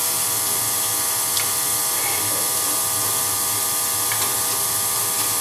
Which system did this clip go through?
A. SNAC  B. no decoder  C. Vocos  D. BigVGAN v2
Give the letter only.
B